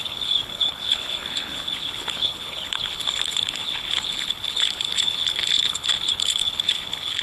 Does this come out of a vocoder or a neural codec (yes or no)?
yes